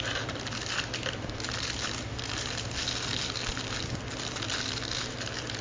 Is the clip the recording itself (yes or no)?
yes